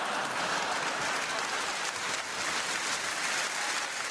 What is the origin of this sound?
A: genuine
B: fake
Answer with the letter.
A